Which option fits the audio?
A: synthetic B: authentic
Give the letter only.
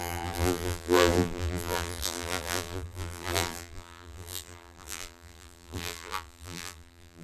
A